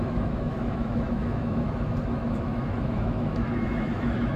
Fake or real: fake